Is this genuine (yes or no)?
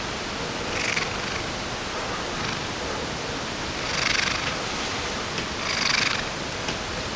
yes